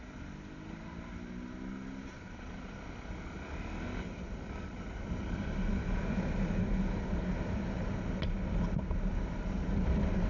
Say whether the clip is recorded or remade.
recorded